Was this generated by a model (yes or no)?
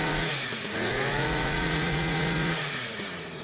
yes